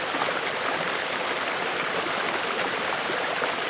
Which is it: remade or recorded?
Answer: recorded